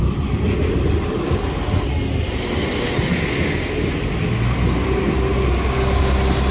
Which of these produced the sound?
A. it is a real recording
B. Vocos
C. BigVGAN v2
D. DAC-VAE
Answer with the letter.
A